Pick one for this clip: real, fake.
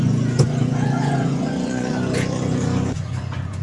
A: fake